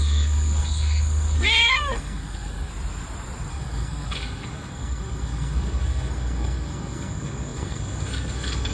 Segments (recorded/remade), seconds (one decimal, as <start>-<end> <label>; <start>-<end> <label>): 0.0-2.7 remade; 2.7-3.5 recorded; 3.5-8.7 remade